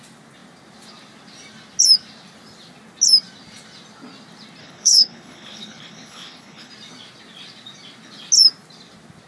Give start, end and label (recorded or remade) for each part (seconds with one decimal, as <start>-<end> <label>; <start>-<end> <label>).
0.0-4.6 recorded; 4.6-6.7 remade; 6.7-9.3 recorded